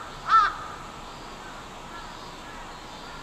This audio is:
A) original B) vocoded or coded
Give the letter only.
A